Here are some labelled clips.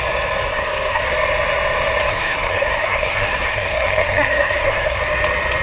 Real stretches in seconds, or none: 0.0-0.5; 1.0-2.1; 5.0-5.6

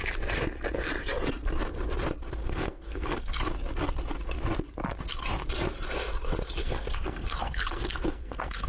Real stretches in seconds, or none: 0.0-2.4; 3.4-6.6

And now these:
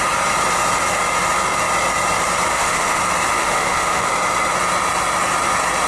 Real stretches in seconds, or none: 0.0-2.5; 3.0-3.4; 4.1-5.9